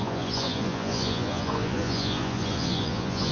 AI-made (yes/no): yes